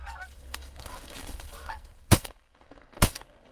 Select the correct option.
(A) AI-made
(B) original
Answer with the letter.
A